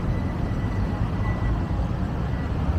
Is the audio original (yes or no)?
yes